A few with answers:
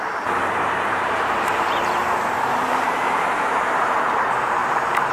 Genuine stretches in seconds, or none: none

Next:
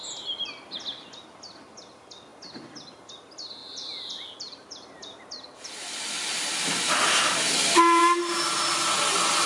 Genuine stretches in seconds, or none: 0.0-3.6; 5.7-8.0; 8.5-9.5

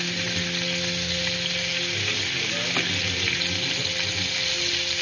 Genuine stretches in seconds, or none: 0.0-5.0